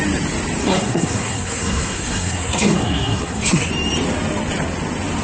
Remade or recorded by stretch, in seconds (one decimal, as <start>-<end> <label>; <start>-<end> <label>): 0.0-0.6 recorded; 0.6-3.7 remade; 3.7-5.2 recorded